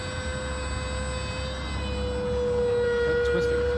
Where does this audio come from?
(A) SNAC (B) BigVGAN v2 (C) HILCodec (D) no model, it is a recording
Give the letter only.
D